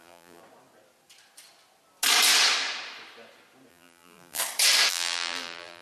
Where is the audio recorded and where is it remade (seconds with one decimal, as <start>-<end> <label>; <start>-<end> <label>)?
0.0-0.4 remade; 0.4-3.7 recorded; 3.7-4.4 remade; 4.4-4.9 recorded; 4.9-5.8 remade